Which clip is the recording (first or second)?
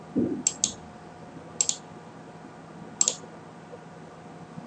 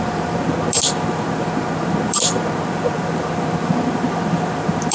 first